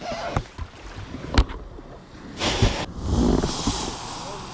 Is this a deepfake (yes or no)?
no